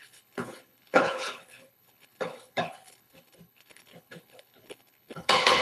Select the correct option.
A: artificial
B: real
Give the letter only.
A